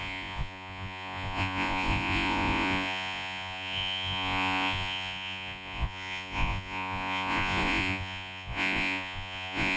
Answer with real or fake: fake